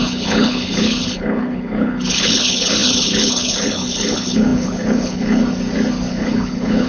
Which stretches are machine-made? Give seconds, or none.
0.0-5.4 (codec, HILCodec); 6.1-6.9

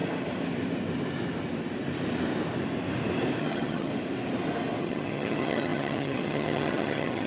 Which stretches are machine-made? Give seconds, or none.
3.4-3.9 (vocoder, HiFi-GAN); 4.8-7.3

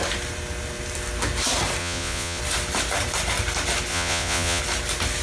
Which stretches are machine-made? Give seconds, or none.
1.8-2.4 (vocoder, Vocos); 3.9-4.6

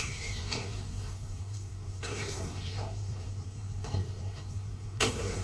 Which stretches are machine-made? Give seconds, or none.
0.0-5.4 (codec, SNAC)